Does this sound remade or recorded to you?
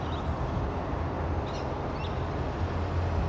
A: recorded